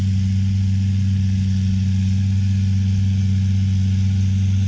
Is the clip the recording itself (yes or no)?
yes